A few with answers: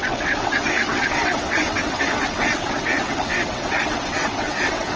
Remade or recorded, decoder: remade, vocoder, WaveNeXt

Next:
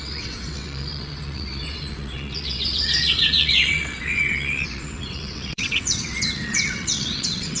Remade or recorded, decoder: remade, vocoder, WaveNeXt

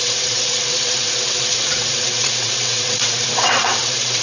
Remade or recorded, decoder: remade, vocoder, WaveNeXt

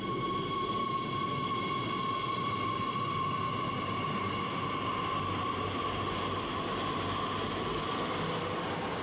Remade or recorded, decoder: recorded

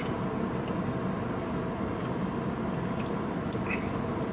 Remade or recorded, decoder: recorded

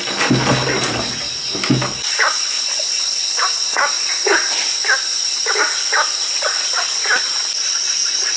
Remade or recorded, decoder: recorded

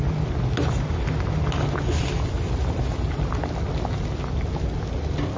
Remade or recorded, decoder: recorded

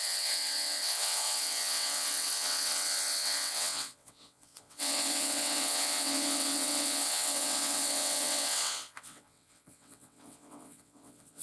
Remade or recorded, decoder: remade, vocoder, WaveNeXt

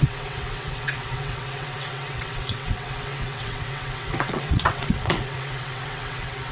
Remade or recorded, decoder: remade, vocoder, WaveNeXt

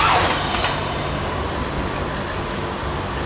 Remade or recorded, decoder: recorded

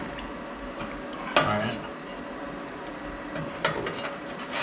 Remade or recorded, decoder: recorded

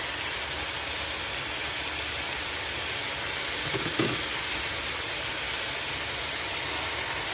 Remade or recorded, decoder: recorded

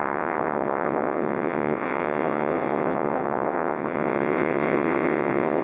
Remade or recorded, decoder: remade, vocoder, WaveNeXt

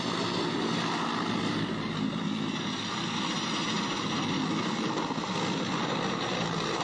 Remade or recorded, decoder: recorded